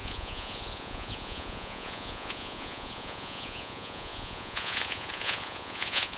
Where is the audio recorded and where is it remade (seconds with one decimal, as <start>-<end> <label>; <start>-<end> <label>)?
0.0-6.2 remade